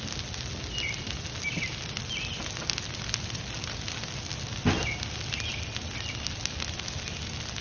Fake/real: real